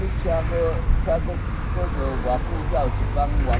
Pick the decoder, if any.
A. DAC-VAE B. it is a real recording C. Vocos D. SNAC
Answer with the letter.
B